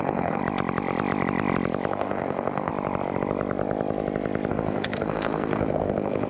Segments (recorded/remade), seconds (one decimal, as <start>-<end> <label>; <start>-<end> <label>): 0.0-0.4 remade; 0.4-1.9 recorded; 1.9-2.7 remade; 2.7-4.5 recorded; 4.5-6.3 remade